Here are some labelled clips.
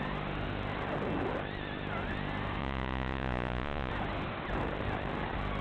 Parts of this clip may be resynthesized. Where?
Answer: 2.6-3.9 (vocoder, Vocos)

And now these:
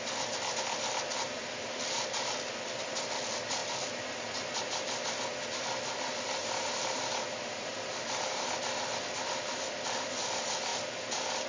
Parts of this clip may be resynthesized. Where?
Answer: 6.4-8.6 (vocoder, BigVGAN v2)

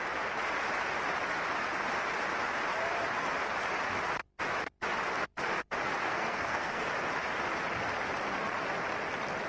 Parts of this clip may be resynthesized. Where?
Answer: 6.0-6.9 (codec, SNAC)

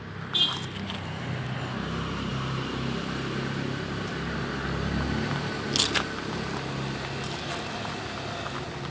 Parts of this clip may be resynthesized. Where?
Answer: none

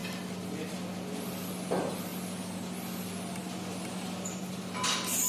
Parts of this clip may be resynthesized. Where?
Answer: none

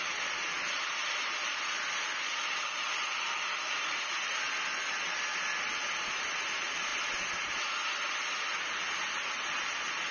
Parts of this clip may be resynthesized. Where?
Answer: none